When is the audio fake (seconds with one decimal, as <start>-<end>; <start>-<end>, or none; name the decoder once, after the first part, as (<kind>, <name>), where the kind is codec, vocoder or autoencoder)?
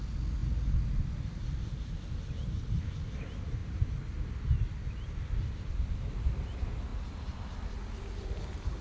none